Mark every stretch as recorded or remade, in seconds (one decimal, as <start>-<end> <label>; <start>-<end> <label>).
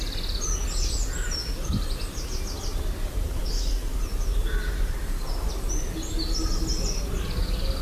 0.0-2.7 recorded; 2.7-3.4 remade; 3.4-4.1 recorded; 4.1-5.5 remade; 5.5-7.8 recorded